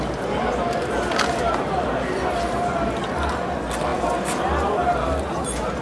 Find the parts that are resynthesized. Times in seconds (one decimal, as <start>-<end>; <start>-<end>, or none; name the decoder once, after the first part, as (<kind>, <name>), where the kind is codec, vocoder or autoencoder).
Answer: none